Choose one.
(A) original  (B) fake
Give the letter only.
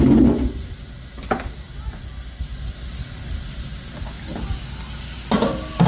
A